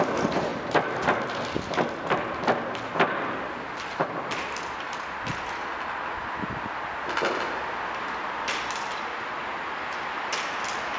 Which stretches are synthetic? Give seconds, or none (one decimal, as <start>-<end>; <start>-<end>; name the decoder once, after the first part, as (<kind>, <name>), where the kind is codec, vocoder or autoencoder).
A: none